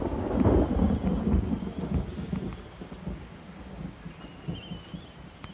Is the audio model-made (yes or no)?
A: no